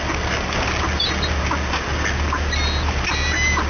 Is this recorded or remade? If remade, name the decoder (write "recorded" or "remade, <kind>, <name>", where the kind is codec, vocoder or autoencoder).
recorded